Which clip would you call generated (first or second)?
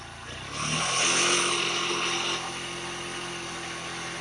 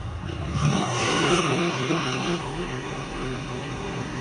second